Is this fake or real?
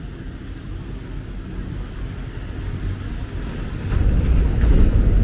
real